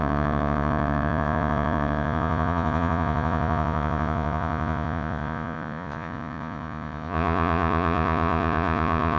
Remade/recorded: remade